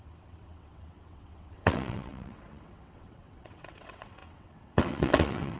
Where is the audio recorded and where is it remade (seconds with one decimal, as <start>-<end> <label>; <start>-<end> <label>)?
0.0-5.6 remade

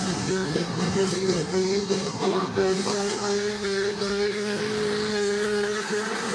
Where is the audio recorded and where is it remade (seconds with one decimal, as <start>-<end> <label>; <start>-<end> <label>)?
0.0-4.6 remade; 4.6-5.1 recorded; 5.1-6.3 remade

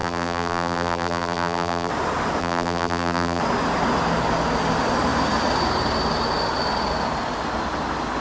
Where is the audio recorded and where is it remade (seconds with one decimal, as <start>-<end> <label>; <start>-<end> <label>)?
0.0-1.9 remade; 1.9-2.4 recorded; 2.4-3.4 remade; 3.4-8.2 recorded